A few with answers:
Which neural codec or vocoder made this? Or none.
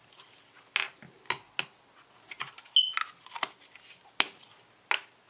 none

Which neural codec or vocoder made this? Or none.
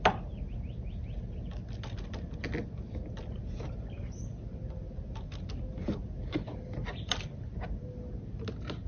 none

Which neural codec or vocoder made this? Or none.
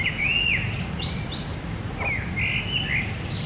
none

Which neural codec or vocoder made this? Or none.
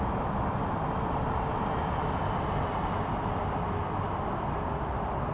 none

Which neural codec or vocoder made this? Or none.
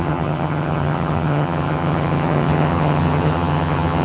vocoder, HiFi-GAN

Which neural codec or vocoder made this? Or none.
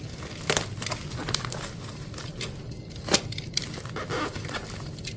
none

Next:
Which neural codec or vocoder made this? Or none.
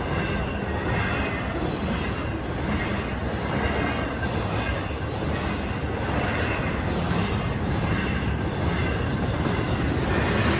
none